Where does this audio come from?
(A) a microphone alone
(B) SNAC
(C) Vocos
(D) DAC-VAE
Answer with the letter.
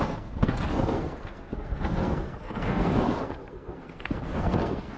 B